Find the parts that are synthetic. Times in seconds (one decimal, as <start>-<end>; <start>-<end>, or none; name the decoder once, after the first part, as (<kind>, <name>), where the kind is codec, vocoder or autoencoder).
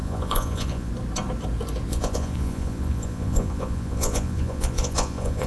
0.0-0.9 (vocoder, Vocos); 1.9-5.5